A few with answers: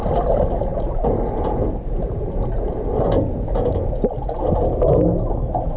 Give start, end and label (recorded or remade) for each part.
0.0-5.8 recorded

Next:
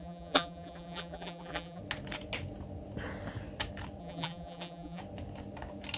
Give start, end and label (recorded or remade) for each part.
0.0-1.8 remade; 1.8-4.0 recorded; 4.0-5.0 remade; 5.0-6.0 recorded

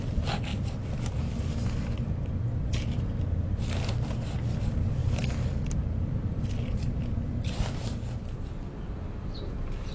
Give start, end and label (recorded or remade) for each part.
0.0-5.0 recorded; 5.0-9.5 remade; 9.5-9.9 recorded

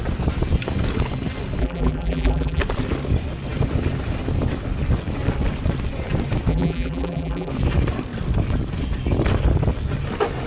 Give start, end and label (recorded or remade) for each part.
0.0-1.6 recorded; 1.6-2.6 remade; 2.6-6.5 recorded; 6.5-7.5 remade; 7.5-10.5 recorded

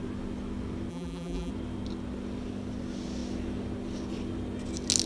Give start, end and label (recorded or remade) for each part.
0.0-0.9 recorded; 0.9-1.5 remade; 1.5-5.1 recorded

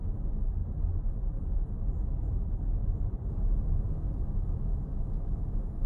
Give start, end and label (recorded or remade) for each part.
0.0-0.6 recorded; 0.6-1.7 remade; 1.7-2.8 recorded; 2.8-3.4 remade; 3.4-4.7 recorded; 4.7-5.5 remade; 5.5-5.9 recorded

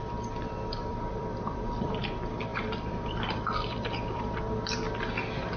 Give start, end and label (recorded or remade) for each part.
0.0-0.9 recorded; 0.9-2.0 remade; 2.0-2.5 recorded; 2.5-4.3 remade; 4.3-5.6 recorded